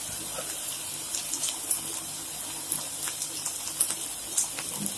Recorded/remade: recorded